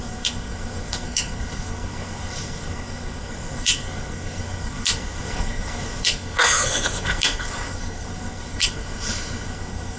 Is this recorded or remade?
remade